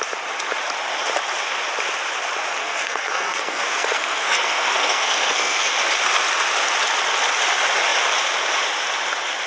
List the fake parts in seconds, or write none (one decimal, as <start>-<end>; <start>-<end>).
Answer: 2.6-5.7